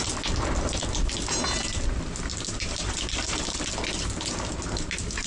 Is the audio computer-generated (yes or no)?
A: no